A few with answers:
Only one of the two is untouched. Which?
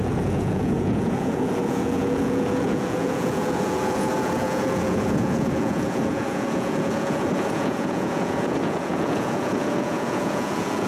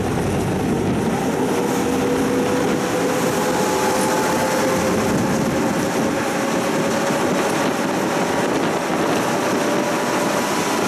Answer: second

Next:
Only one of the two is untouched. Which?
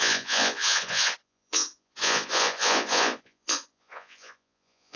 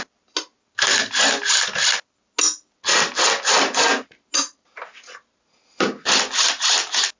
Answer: second